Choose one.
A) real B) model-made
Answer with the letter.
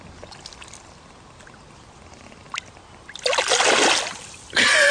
A